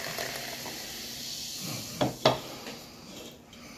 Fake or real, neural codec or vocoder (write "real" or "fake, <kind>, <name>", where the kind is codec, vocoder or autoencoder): real